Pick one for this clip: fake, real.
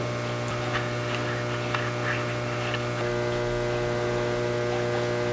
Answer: real